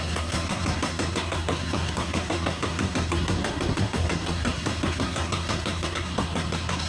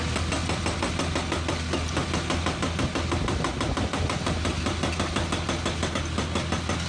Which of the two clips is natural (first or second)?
second